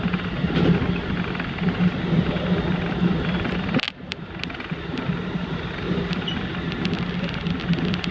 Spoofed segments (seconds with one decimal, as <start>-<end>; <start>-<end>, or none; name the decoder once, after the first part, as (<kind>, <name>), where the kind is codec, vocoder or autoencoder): none